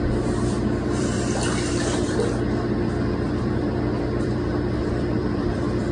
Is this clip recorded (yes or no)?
no